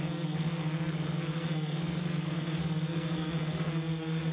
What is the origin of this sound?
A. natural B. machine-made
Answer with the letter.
B